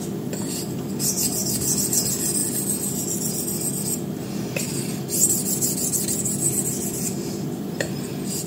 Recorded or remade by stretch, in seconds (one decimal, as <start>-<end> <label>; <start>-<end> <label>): 0.0-6.9 recorded; 6.9-8.1 remade; 8.1-8.5 recorded